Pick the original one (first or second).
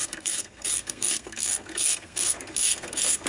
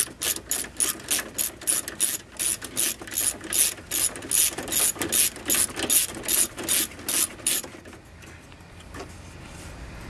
second